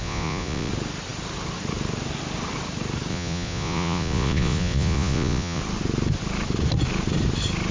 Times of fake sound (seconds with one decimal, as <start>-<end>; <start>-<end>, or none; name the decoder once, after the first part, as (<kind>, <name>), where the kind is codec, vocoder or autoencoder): 0.0-0.7 (vocoder, Vocos); 3.1-5.6